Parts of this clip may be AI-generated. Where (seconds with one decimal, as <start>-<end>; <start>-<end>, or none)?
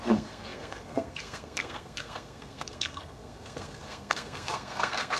0.0-5.2